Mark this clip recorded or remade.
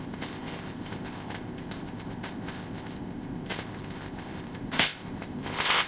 remade